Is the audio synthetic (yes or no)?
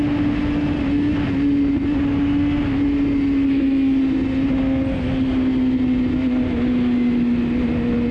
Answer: no